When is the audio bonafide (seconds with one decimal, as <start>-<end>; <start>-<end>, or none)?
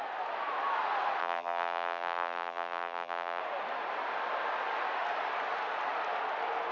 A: 0.0-1.2; 3.4-6.7